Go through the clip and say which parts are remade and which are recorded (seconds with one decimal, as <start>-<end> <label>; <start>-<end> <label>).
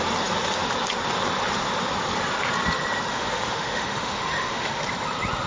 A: 0.0-3.1 recorded; 3.1-4.8 remade; 4.8-5.5 recorded